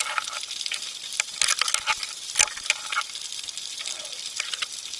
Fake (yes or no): no